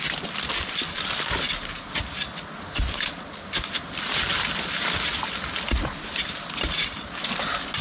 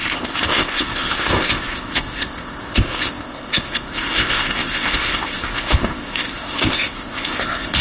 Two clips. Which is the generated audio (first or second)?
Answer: second